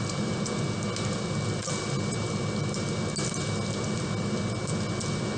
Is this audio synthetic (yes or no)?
no